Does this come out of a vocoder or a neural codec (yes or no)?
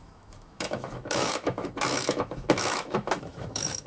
yes